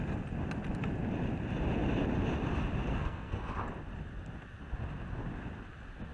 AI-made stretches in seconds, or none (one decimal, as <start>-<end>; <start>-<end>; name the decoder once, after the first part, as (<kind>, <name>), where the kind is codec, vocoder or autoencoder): 2.9-3.5 (codec, SNAC)